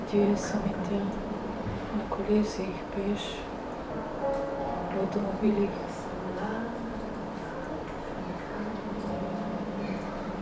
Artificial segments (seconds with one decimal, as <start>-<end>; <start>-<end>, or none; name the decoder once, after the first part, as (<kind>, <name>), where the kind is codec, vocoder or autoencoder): 0.0-6.3 (vocoder, BigVGAN v2); 8.9-10.4